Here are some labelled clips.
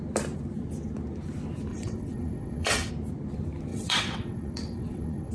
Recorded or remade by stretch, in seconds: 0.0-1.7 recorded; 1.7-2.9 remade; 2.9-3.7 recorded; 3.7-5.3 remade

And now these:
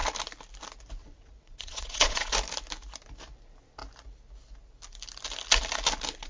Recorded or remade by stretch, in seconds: 0.0-1.0 recorded; 1.0-2.3 remade; 2.3-6.3 recorded

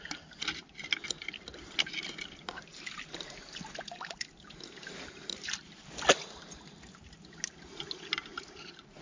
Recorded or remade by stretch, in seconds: 0.0-9.0 recorded

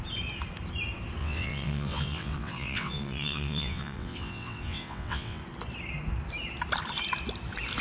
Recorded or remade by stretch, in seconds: 0.0-1.2 recorded; 1.2-5.4 remade; 5.4-7.8 recorded